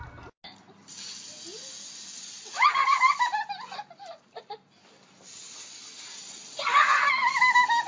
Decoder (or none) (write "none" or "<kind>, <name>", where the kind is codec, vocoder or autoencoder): none